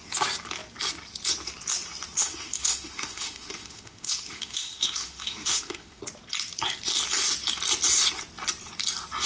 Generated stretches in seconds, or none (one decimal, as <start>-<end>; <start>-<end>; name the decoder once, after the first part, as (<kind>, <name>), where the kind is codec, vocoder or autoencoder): 2.2-6.0 (autoencoder, DAC-VAE)